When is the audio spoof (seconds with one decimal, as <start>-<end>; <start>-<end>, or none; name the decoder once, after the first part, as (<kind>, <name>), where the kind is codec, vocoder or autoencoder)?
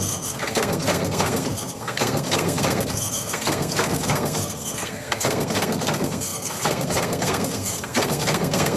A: 0.0-8.8 (codec, SNAC)